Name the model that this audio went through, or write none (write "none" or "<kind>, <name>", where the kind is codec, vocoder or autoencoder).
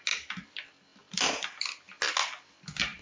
none